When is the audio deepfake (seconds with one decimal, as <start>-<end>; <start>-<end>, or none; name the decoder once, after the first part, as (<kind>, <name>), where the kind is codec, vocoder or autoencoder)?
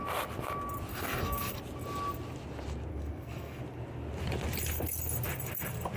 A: 0.9-1.6 (codec, SNAC); 2.9-3.6